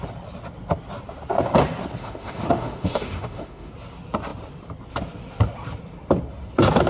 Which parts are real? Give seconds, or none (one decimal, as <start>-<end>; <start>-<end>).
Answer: 0.0-2.0; 3.7-6.9